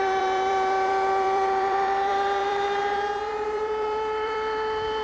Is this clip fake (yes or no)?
yes